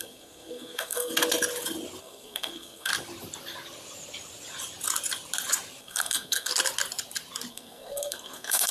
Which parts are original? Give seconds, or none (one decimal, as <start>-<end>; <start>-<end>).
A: 1.1-2.0; 2.9-5.8; 6.5-7.5